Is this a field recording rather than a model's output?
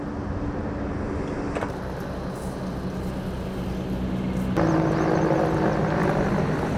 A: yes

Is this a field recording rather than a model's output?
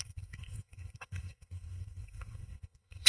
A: no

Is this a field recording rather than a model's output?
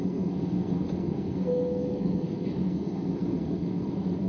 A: no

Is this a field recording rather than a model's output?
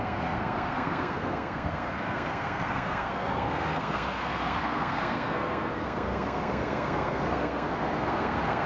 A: no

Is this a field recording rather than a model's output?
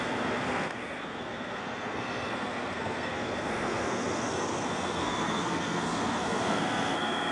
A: no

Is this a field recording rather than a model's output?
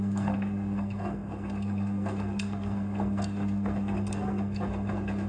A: no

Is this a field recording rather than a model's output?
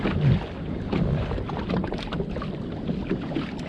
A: yes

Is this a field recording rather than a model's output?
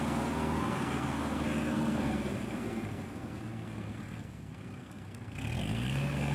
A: no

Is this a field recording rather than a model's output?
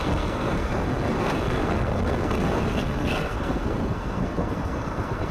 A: no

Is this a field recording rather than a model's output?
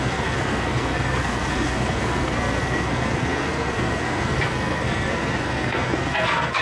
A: no